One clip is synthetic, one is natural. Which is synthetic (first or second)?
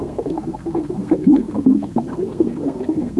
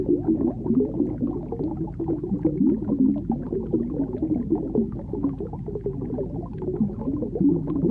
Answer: first